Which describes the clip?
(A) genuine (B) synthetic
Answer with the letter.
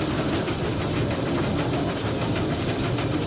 A